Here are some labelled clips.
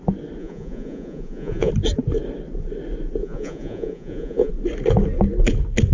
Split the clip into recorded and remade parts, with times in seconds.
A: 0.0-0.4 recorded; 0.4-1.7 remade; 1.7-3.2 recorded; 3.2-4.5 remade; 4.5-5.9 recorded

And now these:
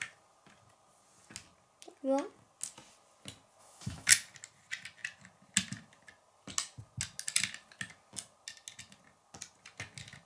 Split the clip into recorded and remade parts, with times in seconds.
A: 0.0-3.6 recorded; 3.6-4.1 remade; 4.1-10.3 recorded

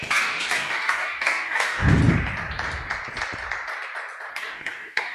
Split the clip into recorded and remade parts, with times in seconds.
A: 0.0-2.0 remade; 2.0-4.3 recorded; 4.3-5.1 remade

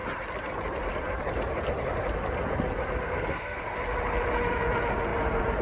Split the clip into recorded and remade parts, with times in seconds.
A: 0.0-3.0 recorded; 3.0-3.6 remade; 3.6-5.6 recorded

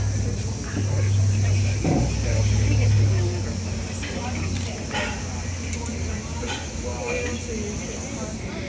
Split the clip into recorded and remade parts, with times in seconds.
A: 0.0-8.7 recorded

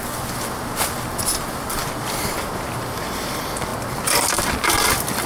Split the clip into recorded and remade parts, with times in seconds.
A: 0.0-5.3 recorded

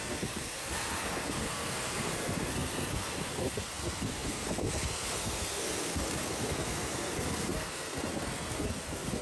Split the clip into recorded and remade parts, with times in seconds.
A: 0.0-9.2 remade

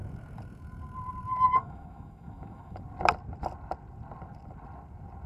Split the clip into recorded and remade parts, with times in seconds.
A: 0.0-1.6 recorded; 1.6-2.8 remade; 2.8-5.3 recorded